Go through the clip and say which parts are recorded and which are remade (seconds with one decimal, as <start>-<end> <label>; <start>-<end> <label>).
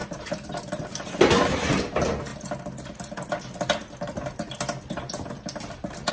0.0-2.3 remade; 2.3-6.1 recorded